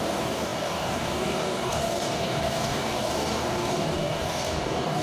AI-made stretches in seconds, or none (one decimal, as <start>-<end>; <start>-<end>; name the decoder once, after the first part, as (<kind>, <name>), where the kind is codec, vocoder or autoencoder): 0.0-5.0 (codec, DAC)